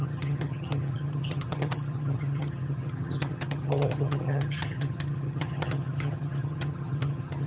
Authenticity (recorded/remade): remade